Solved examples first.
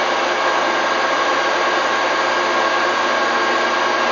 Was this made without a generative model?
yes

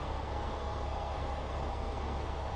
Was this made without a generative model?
no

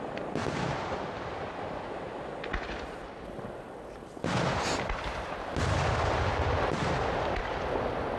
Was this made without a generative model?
yes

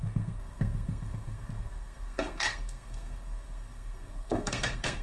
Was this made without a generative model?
no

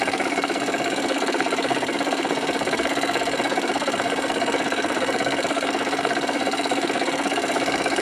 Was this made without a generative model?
no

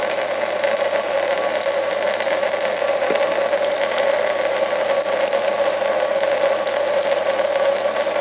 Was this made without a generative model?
yes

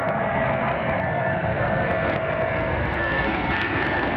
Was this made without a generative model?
no